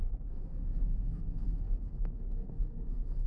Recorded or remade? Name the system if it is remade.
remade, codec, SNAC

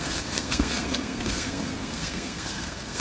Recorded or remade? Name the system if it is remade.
remade, codec, SNAC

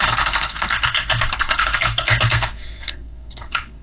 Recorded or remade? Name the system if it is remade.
remade, codec, SNAC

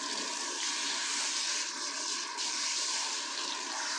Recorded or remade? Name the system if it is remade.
recorded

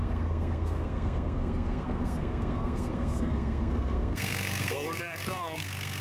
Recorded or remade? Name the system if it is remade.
remade, codec, SNAC